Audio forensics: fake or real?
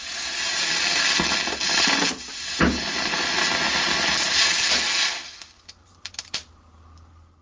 real